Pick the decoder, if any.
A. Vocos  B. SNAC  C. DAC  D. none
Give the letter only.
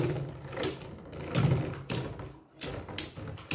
D